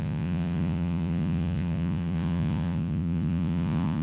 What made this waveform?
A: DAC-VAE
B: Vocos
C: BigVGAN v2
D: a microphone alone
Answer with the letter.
B